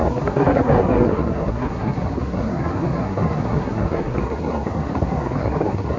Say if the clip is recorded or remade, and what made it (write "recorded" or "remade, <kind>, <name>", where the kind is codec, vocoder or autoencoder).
remade, codec, SNAC